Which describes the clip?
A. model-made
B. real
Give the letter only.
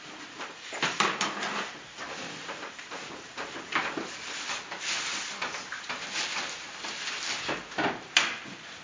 B